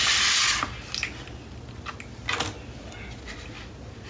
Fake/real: real